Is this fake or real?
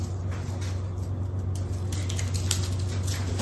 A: real